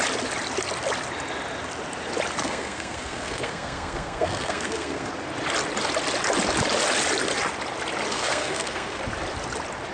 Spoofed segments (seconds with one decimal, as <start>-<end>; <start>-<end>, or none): 2.4-5.1; 8.1-9.0